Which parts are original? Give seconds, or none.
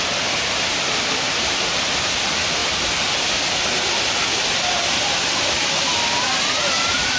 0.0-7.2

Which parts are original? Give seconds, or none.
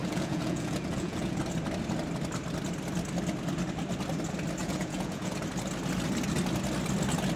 1.4-4.6; 5.4-7.4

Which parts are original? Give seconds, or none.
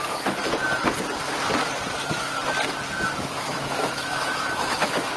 0.4-3.2